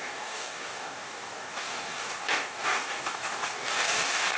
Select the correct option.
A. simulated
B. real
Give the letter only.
A